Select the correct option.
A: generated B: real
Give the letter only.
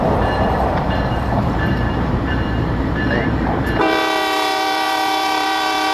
A